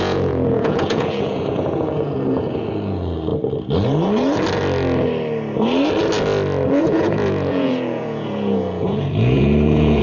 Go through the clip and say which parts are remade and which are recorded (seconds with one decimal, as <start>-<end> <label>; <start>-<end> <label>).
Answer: 0.0-3.3 remade; 3.3-6.8 recorded; 6.8-10.0 remade